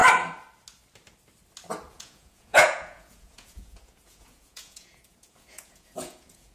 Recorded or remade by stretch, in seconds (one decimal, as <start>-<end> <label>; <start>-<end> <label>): 0.0-1.9 recorded; 1.9-6.5 remade